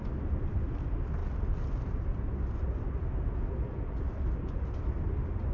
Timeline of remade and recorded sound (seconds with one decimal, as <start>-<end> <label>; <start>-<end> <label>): 0.0-5.5 recorded

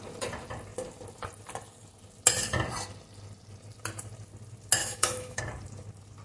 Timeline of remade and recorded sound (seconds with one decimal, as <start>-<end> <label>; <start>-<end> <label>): 0.0-4.8 recorded; 4.8-5.4 remade; 5.4-6.2 recorded

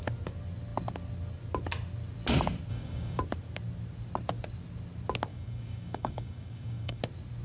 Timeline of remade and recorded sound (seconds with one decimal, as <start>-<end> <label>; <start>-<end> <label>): 0.0-2.7 recorded; 2.7-3.2 remade; 3.2-5.3 recorded; 5.3-7.0 remade; 7.0-7.4 recorded

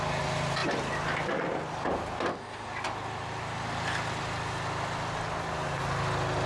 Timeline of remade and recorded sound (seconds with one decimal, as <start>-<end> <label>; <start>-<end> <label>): 0.0-6.5 recorded